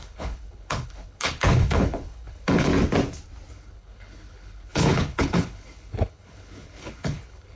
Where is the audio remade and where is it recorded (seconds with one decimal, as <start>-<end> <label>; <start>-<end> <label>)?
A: 0.0-2.7 remade; 2.7-3.5 recorded; 3.5-7.6 remade